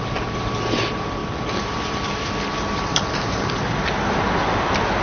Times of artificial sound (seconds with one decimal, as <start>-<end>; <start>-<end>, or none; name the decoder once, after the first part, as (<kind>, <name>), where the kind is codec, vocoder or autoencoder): none